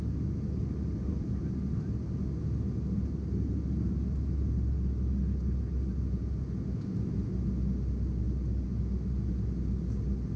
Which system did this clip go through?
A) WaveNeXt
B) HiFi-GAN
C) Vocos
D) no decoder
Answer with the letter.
D